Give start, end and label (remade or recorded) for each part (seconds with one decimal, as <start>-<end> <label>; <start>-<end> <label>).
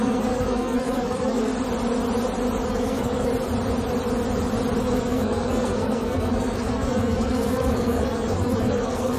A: 0.0-1.5 remade; 1.5-2.7 recorded; 2.7-3.3 remade; 3.3-4.8 recorded; 4.8-9.2 remade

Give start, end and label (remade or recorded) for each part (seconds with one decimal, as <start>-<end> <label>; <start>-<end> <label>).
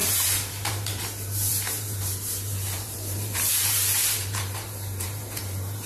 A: 0.0-5.9 remade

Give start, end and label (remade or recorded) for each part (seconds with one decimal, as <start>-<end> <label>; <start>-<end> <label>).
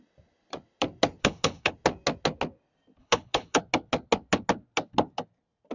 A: 0.0-1.2 recorded; 1.2-1.7 remade; 1.7-3.0 recorded; 3.0-3.6 remade; 3.6-5.7 recorded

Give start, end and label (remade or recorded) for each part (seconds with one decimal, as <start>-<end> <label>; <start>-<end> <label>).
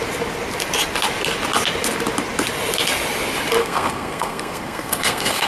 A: 0.0-3.6 recorded; 3.6-5.5 remade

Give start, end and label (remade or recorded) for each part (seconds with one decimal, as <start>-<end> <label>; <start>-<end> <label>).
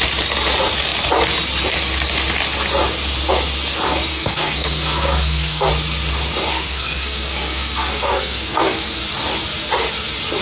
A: 0.0-4.1 recorded; 4.1-5.7 remade; 5.7-6.5 recorded; 6.5-9.0 remade; 9.0-10.4 recorded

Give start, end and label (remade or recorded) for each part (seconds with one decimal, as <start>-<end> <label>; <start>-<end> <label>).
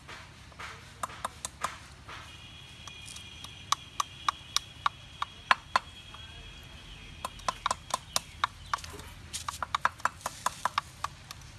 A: 0.0-11.6 recorded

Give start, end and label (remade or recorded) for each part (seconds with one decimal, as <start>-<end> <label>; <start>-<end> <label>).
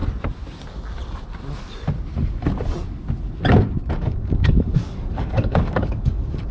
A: 0.0-3.9 recorded; 3.9-6.5 remade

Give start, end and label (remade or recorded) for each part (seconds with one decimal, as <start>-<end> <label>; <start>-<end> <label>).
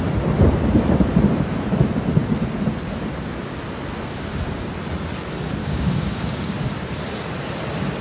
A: 0.0-5.6 recorded; 5.6-6.4 remade; 6.4-8.0 recorded